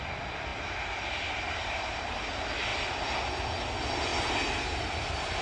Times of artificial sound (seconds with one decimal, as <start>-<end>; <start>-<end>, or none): none